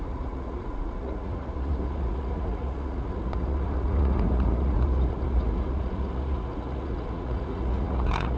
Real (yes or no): no